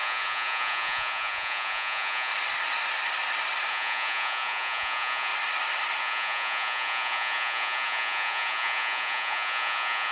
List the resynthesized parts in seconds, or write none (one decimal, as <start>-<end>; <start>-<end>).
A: 0.0-2.3; 3.7-5.3; 6.0-10.1